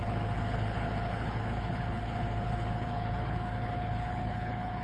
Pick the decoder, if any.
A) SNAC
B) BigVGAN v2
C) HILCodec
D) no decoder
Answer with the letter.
C